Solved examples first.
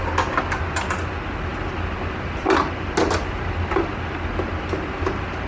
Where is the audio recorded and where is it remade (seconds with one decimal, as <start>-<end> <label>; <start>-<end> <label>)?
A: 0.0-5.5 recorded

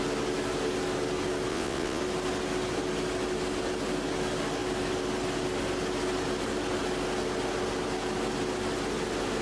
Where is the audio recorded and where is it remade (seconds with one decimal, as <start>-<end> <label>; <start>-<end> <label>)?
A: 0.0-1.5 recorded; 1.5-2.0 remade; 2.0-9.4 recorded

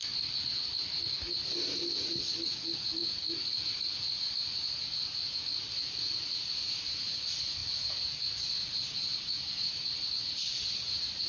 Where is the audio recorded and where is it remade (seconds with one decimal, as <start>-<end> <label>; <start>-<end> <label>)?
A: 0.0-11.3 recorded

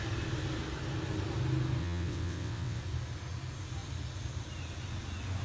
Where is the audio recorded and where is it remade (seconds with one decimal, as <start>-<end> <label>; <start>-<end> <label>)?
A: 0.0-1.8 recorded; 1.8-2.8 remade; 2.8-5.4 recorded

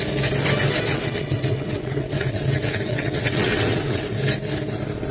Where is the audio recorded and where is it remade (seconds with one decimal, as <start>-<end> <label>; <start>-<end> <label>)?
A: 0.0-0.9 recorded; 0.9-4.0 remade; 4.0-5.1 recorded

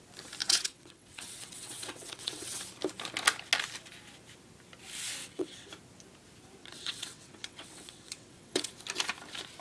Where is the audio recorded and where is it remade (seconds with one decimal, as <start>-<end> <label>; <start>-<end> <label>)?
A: 0.0-0.4 recorded; 0.4-2.6 remade; 2.6-5.2 recorded; 5.2-5.7 remade; 5.7-6.6 recorded; 6.6-8.7 remade; 8.7-9.6 recorded